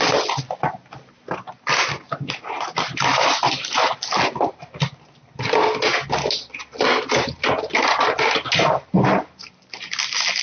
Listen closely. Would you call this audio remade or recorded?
recorded